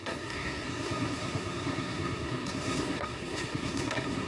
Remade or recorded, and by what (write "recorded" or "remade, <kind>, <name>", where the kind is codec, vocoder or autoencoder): remade, codec, SNAC